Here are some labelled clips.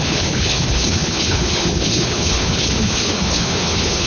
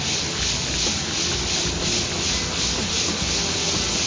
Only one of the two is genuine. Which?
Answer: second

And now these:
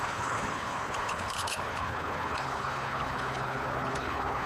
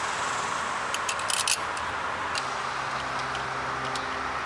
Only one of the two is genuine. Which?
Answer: second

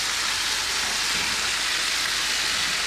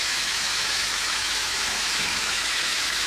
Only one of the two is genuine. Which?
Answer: first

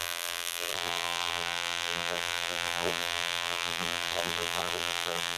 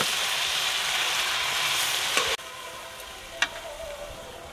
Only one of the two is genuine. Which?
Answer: second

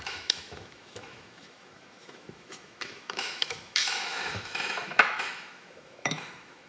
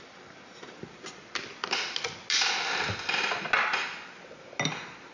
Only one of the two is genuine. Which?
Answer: second